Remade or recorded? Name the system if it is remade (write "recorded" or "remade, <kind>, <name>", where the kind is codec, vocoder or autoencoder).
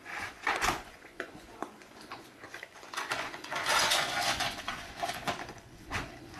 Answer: remade, vocoder, Vocos